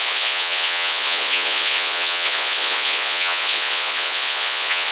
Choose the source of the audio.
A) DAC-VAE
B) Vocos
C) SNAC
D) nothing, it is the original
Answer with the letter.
B